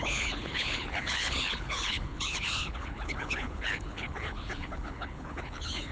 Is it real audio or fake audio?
fake